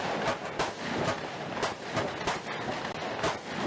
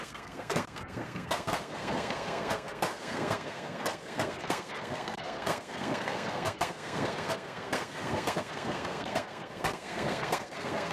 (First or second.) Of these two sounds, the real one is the first